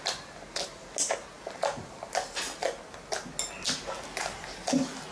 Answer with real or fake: real